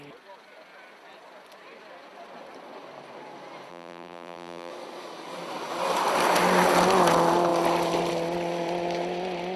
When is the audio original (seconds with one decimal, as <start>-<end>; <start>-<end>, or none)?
0.0-3.7; 4.7-9.6